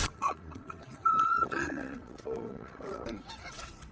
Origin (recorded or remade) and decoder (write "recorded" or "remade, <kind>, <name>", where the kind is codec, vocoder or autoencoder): remade, vocoder, WaveNeXt